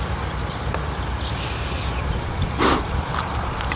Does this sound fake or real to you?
real